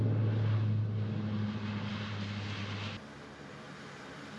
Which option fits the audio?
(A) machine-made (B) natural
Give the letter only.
B